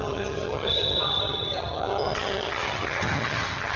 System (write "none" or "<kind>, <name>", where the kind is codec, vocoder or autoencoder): vocoder, HiFi-GAN